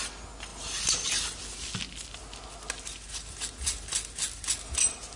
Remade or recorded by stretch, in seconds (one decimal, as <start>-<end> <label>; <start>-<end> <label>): 0.0-5.2 recorded